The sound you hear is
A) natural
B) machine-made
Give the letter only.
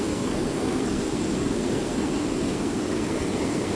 B